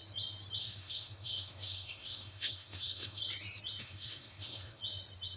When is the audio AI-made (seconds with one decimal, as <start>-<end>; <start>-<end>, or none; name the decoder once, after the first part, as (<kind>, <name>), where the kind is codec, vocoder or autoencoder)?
0.6-3.2 (codec, SNAC); 3.8-4.8